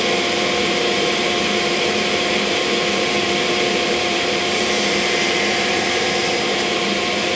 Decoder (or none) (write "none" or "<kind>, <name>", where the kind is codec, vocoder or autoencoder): vocoder, BigVGAN v2